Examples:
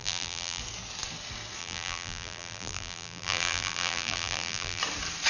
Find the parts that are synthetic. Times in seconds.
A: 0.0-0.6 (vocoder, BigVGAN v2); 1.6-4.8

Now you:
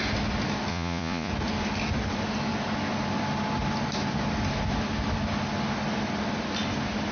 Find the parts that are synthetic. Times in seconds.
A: 0.7-1.3 (vocoder, Vocos)

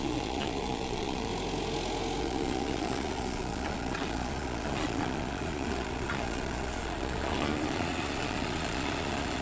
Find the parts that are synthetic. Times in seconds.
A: 0.0-1.3 (vocoder, Vocos); 2.2-9.4

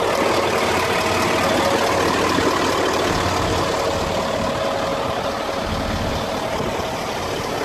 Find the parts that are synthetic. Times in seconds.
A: none

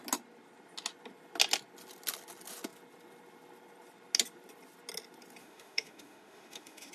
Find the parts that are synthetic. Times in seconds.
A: 5.4-6.9 (autoencoder, DAC-VAE)

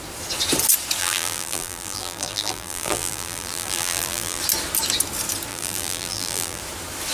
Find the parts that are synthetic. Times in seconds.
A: 1.0-4.4 (vocoder, BigVGAN v2); 5.5-6.6

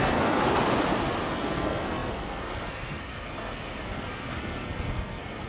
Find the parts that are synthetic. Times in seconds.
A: 0.0-0.4 (codec, SNAC); 1.3-5.5